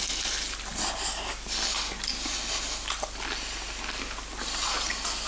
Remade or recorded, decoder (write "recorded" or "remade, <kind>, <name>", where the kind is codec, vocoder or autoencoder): recorded